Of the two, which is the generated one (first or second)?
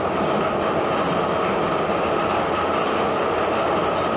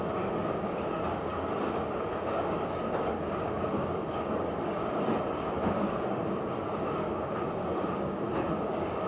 second